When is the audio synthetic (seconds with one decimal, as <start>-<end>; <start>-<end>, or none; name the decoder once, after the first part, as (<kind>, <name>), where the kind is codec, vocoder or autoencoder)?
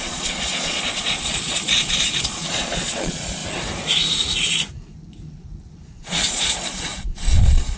0.0-3.4 (vocoder, Vocos); 5.9-7.8